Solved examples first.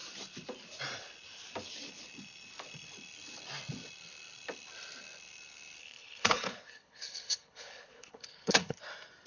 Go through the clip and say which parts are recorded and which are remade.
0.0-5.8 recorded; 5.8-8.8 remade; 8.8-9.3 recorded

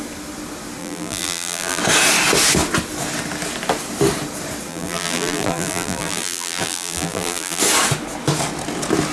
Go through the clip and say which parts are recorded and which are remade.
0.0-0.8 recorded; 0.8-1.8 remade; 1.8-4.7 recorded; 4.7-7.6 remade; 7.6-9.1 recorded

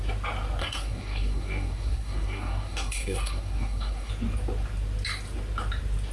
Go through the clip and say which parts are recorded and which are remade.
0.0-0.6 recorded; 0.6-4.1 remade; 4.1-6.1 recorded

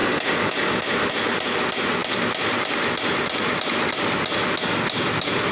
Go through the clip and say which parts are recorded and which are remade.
0.0-5.5 recorded

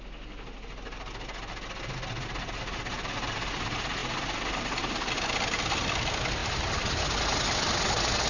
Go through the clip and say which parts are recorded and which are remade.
0.0-6.4 recorded; 6.4-7.0 remade; 7.0-8.3 recorded

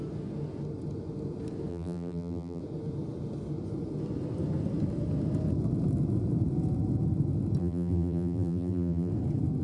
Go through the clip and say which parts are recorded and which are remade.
0.0-1.7 recorded; 1.7-2.6 remade; 2.6-7.6 recorded; 7.6-9.1 remade; 9.1-9.6 recorded

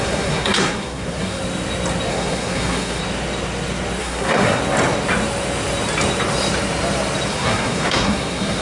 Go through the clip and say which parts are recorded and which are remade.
0.0-1.4 remade; 1.4-2.1 recorded; 2.1-3.0 remade; 3.0-4.0 recorded; 4.0-4.6 remade; 4.6-7.3 recorded; 7.3-8.6 remade

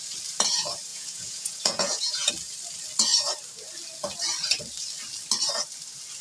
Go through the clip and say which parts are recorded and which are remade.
0.0-0.9 recorded; 0.9-2.3 remade; 2.3-6.2 recorded